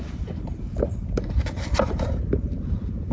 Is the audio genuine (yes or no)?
no